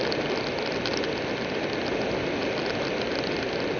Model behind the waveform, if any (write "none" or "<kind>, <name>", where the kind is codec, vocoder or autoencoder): none